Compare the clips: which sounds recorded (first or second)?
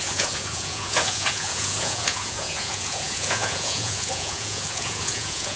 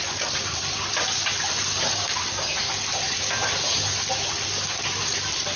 second